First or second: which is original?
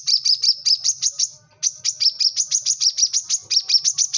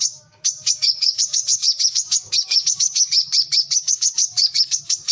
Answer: first